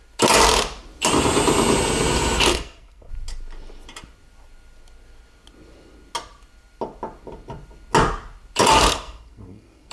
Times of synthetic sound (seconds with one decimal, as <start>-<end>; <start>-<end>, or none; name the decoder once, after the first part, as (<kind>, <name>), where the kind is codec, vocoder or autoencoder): 2.5-3.1 (codec, SNAC); 8.9-9.9